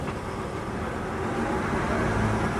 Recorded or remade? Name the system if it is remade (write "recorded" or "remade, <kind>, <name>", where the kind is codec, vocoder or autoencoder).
recorded